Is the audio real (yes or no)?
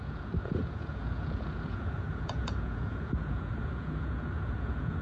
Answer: no